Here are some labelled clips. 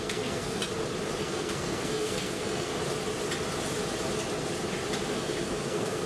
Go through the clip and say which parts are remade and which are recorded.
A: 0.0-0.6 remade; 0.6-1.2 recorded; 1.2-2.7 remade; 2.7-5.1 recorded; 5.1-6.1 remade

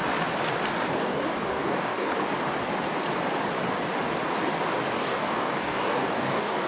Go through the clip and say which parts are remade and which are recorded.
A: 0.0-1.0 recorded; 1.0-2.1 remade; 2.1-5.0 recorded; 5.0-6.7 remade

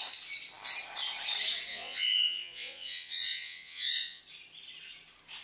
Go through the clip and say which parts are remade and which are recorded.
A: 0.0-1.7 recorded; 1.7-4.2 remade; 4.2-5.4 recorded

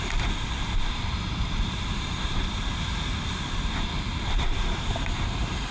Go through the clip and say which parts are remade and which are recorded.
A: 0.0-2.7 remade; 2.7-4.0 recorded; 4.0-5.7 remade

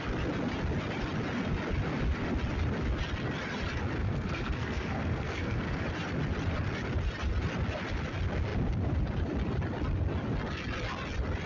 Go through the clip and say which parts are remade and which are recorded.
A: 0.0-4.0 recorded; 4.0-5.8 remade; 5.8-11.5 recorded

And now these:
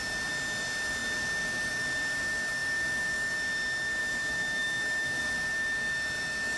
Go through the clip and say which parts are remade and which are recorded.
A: 0.0-4.0 recorded; 4.0-5.2 remade; 5.2-6.6 recorded

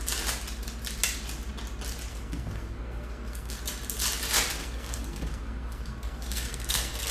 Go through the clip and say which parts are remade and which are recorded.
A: 0.0-2.1 recorded; 2.1-3.6 remade; 3.6-4.6 recorded; 4.6-7.1 remade

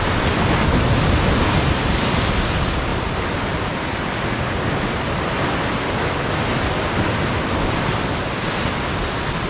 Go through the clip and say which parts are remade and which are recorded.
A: 0.0-9.5 recorded